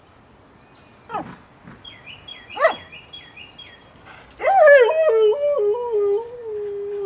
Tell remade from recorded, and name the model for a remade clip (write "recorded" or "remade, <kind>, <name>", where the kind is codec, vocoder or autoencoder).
recorded